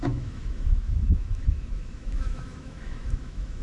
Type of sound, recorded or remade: remade